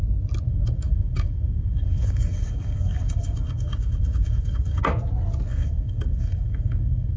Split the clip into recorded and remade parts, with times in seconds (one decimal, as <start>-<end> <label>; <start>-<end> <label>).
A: 0.0-0.5 recorded; 0.5-4.8 remade; 4.8-5.5 recorded; 5.5-7.2 remade